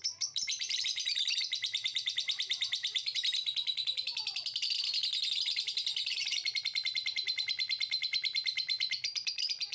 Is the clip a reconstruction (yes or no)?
yes